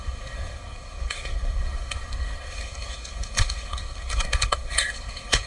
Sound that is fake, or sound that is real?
fake